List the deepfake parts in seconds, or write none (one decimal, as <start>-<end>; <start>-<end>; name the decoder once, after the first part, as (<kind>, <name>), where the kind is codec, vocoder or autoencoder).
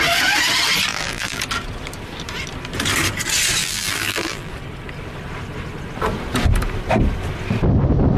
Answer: 0.9-1.4 (vocoder, BigVGAN v2); 3.6-4.5